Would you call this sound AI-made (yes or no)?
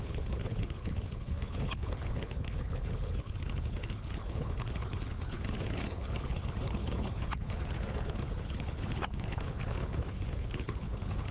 yes